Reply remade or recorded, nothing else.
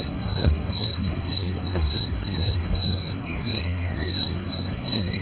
remade